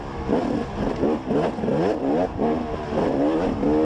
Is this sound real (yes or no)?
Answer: yes